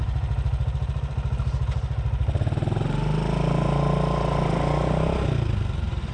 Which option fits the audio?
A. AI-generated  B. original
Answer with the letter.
B